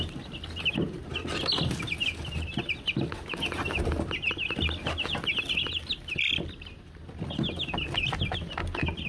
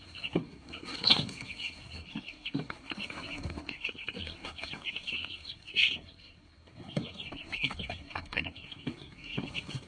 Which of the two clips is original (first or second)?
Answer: first